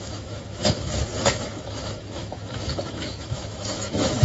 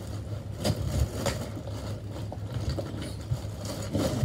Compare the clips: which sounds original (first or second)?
second